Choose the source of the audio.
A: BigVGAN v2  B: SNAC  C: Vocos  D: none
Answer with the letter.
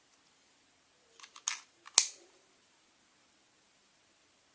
D